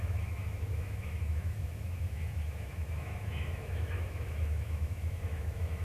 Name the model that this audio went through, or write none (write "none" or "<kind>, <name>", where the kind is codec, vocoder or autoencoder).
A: autoencoder, DAC-VAE